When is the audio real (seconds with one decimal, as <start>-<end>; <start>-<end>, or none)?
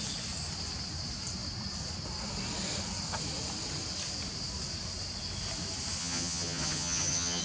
0.0-6.0